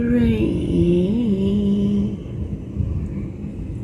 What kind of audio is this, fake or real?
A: real